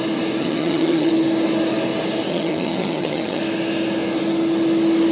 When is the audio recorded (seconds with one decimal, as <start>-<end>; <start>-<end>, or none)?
0.0-0.4; 1.1-2.3; 3.4-5.1